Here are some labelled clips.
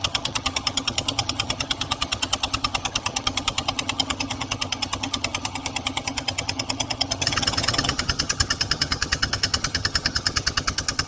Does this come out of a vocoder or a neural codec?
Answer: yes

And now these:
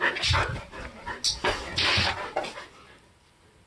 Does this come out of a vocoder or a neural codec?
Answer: no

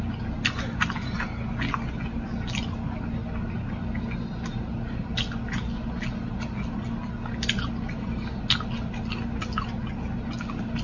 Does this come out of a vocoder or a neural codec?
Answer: no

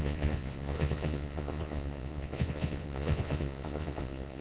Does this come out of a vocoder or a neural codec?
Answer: yes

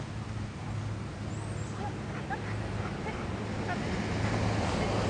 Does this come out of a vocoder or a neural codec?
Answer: no